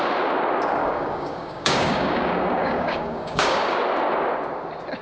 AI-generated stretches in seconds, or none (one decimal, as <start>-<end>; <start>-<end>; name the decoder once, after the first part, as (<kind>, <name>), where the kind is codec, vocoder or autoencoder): 0.8-3.8 (codec, DAC)